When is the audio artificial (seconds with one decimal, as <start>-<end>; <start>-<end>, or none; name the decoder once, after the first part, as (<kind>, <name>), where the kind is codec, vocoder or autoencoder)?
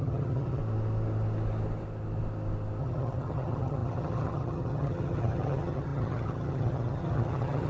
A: 0.0-0.6 (vocoder, HiFi-GAN); 2.8-7.7